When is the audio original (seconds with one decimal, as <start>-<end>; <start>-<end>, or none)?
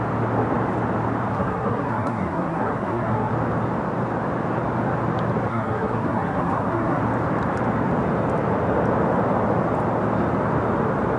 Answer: 0.0-1.3; 3.3-5.5; 7.0-11.2